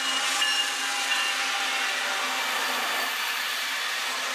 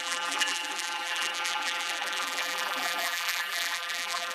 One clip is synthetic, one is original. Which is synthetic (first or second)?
second